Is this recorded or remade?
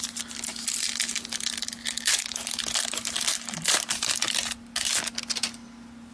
recorded